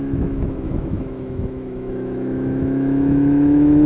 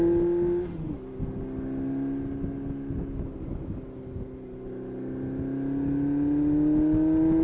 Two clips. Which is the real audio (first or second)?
second